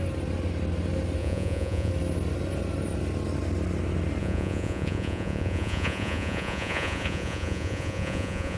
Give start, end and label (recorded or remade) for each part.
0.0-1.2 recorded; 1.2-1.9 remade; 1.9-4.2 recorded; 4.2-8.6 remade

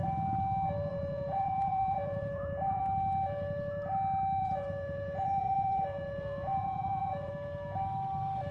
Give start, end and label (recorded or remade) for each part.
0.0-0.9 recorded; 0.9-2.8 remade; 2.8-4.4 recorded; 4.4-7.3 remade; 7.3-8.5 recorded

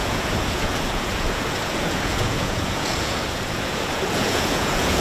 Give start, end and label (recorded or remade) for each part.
0.0-5.0 remade

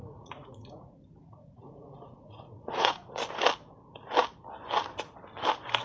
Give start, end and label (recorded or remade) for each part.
0.0-3.1 remade; 3.1-5.8 recorded

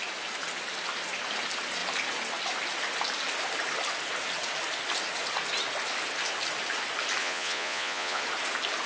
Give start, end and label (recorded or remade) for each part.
0.0-7.2 recorded; 7.2-8.2 remade; 8.2-8.9 recorded

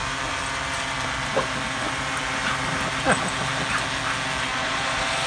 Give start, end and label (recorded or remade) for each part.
0.0-4.5 recorded; 4.5-5.3 remade

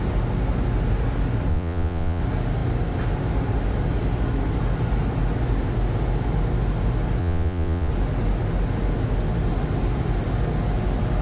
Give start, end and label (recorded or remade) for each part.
0.0-1.5 recorded; 1.5-2.2 remade; 2.2-7.2 recorded; 7.2-7.9 remade; 7.9-11.2 recorded

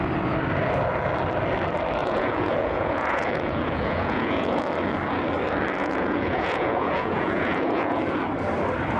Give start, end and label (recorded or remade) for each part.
0.0-2.0 recorded; 2.0-4.6 remade; 4.6-5.8 recorded; 5.8-8.0 remade; 8.0-9.0 recorded